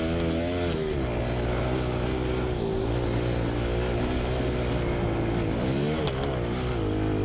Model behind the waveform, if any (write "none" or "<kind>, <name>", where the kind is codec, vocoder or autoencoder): none